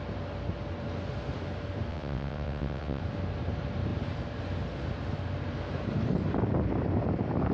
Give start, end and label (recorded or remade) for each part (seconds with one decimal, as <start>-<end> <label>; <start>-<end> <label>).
0.0-1.9 recorded; 1.9-3.0 remade; 3.0-7.5 recorded